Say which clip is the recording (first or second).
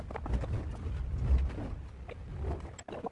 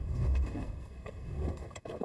first